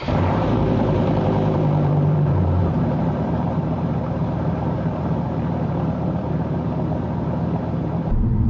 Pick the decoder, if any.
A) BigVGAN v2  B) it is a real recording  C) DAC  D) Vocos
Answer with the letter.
A